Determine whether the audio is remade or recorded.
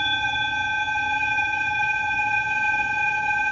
remade